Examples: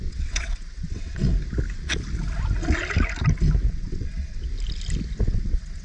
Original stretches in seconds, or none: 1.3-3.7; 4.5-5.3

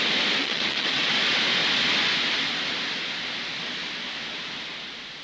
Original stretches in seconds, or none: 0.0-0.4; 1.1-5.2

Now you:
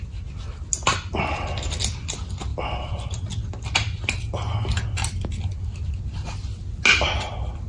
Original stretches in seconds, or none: 0.0-7.7

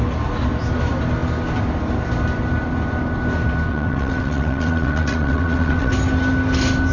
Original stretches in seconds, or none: 0.0-3.7; 5.9-6.9

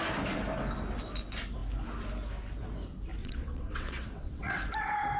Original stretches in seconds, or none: 0.0-3.2; 4.6-5.2

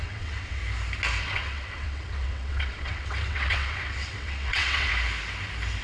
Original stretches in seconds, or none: 0.6-1.2; 4.9-5.8

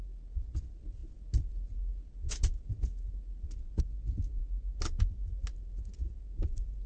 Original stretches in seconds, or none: 0.0-6.9

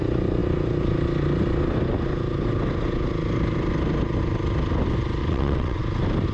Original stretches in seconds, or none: 0.0-5.2; 5.8-6.3